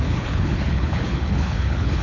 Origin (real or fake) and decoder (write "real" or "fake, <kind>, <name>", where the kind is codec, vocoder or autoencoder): fake, codec, HILCodec